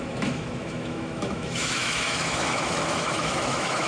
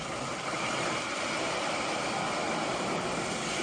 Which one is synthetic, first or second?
first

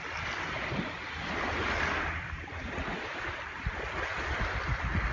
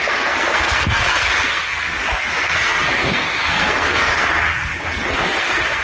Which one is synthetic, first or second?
second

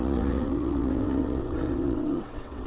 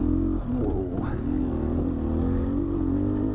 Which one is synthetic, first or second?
first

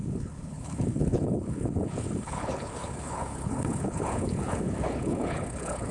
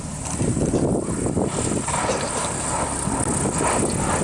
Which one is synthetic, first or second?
first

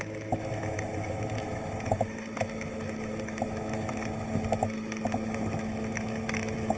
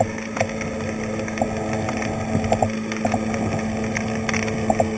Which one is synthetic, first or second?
first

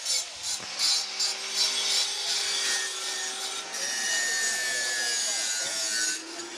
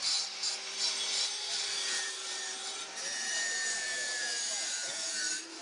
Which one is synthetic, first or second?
second